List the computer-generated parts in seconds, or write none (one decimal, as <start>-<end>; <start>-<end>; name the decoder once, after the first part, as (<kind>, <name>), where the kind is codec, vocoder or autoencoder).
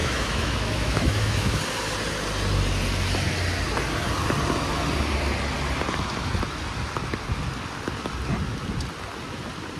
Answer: 0.0-1.6 (autoencoder, DAC-VAE)